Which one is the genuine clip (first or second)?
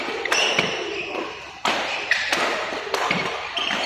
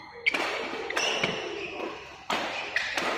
second